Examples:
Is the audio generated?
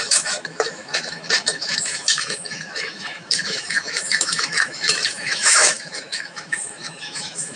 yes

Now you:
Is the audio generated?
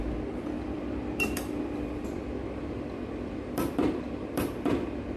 yes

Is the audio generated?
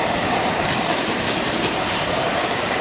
yes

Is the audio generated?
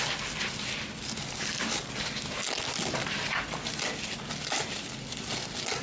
no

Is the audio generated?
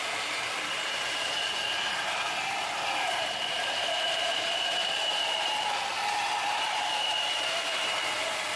yes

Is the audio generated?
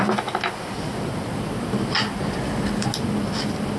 no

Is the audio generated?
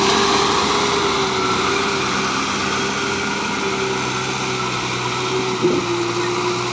no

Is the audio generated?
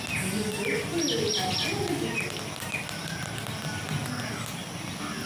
no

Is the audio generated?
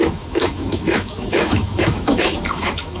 yes